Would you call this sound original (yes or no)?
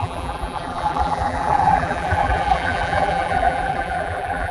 no